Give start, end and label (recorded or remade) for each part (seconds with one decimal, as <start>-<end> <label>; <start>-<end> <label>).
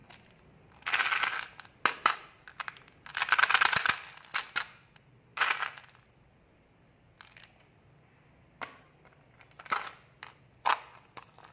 0.0-11.5 recorded